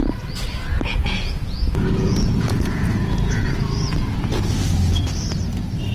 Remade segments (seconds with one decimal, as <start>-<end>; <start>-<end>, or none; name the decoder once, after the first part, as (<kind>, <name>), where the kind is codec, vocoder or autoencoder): 0.9-3.6 (vocoder, Vocos)